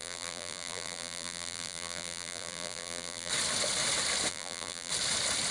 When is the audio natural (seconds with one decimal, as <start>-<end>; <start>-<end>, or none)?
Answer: 3.3-4.3; 4.9-5.5